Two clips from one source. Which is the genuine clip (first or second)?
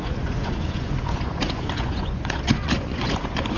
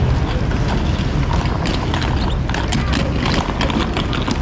second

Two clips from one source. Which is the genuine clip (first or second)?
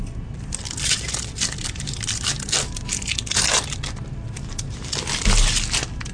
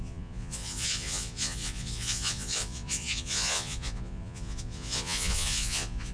first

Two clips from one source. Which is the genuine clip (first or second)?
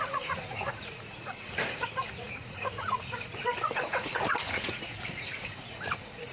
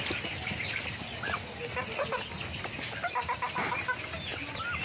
second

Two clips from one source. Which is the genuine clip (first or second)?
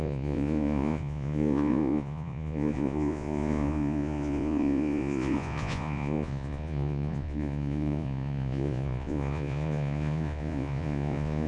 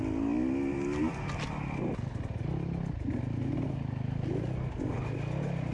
second